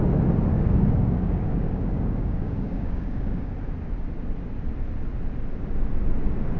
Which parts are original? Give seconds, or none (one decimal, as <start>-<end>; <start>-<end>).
0.0-0.5; 3.5-6.6